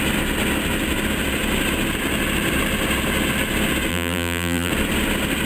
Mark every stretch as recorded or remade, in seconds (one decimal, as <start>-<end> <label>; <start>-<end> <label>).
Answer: 0.0-3.9 recorded; 3.9-4.7 remade; 4.7-5.5 recorded